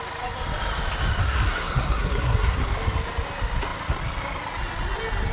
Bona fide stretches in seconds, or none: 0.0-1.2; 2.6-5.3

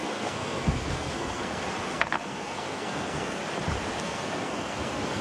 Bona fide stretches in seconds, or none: 3.4-4.0

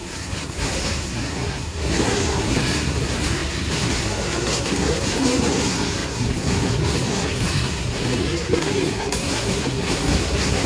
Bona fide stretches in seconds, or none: none

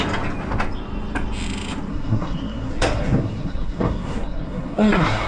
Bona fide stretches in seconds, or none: 0.0-1.9